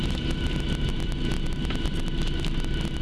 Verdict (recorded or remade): recorded